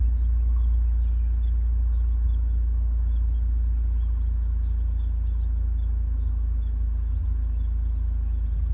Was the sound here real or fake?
real